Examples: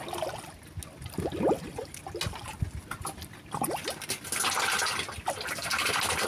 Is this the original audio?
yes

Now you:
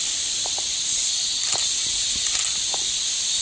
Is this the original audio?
no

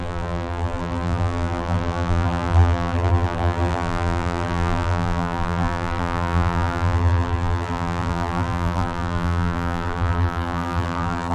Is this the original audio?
no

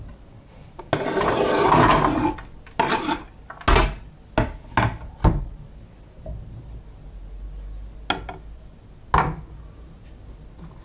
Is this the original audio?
yes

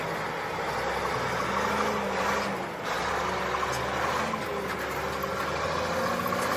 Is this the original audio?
yes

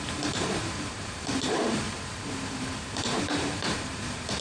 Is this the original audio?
no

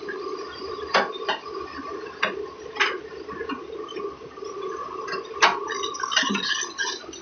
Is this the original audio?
no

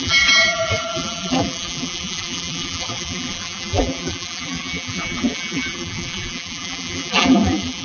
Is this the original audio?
no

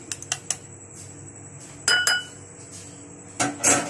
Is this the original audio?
yes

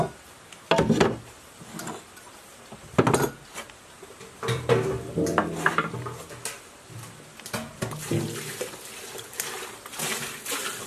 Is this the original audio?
yes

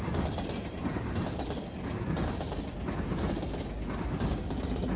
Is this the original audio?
yes